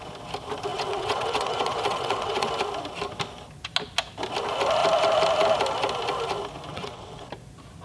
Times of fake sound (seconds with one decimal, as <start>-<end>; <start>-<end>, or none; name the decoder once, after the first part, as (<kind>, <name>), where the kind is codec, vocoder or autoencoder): 0.7-2.5 (vocoder, WaveNeXt); 6.7-7.3